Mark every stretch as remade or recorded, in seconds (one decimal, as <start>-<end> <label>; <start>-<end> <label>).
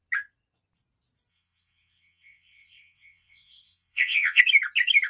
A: 0.0-1.3 recorded; 1.3-4.4 remade; 4.4-5.1 recorded